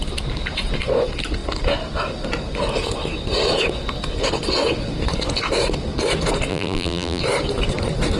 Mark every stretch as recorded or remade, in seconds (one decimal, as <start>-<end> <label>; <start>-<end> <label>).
0.0-6.5 recorded; 6.5-7.2 remade; 7.2-8.2 recorded